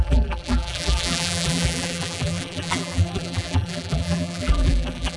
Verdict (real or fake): fake